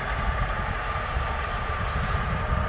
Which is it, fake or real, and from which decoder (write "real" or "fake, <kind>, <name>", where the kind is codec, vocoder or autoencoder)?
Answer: real